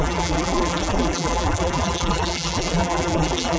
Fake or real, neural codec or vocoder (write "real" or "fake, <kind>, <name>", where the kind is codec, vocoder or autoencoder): fake, vocoder, BigVGAN v2